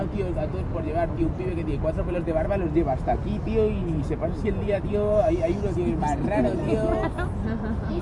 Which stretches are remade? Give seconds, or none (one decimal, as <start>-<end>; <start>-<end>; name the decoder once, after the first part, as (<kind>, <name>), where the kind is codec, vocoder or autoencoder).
3.8-5.3 (vocoder, BigVGAN v2)

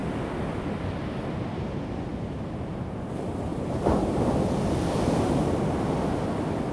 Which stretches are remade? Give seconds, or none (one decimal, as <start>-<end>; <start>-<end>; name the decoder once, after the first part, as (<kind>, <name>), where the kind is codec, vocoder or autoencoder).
1.0-5.4 (vocoder, BigVGAN v2)

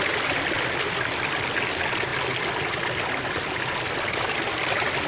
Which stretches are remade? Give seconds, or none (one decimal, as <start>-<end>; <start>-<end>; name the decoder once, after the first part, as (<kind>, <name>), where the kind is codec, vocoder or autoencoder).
none

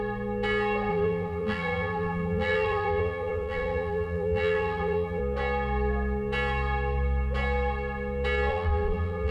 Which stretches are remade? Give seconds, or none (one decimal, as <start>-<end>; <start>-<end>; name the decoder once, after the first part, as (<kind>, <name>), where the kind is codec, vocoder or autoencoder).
0.9-5.2 (vocoder, BigVGAN v2); 8.5-9.3

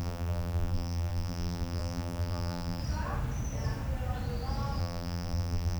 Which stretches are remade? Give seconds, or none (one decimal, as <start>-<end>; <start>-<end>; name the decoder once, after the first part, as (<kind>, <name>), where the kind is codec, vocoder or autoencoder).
0.0-2.8 (vocoder, BigVGAN v2); 4.8-5.8

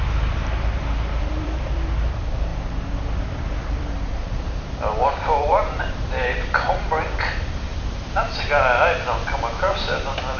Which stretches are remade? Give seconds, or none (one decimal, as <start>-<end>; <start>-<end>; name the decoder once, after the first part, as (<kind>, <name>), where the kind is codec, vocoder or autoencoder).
0.0-2.5 (vocoder, BigVGAN v2); 3.6-7.7; 9.5-10.4

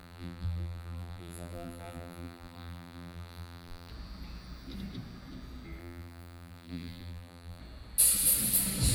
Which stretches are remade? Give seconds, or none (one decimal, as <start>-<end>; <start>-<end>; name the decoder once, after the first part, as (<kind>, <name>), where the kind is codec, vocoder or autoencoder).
0.0-3.9 (vocoder, BigVGAN v2); 5.8-7.6

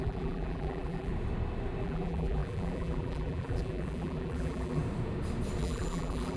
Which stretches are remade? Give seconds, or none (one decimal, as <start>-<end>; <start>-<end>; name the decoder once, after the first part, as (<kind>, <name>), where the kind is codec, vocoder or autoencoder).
0.0-1.1 (vocoder, BigVGAN v2); 1.8-4.8; 5.6-6.4